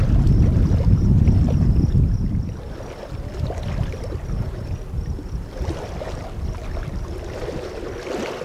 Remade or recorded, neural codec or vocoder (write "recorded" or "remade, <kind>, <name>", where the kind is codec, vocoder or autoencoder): recorded